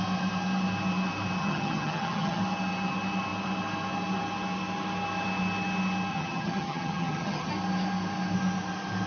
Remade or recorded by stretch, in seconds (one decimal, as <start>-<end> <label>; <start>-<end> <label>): 0.0-1.4 recorded; 1.4-2.4 remade; 2.4-6.1 recorded; 6.1-7.5 remade; 7.5-9.1 recorded